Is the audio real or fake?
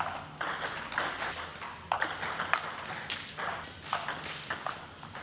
real